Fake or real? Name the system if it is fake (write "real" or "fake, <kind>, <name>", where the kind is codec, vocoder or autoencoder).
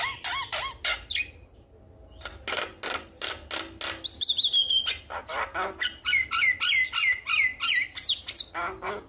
real